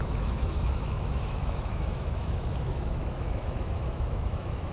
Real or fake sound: fake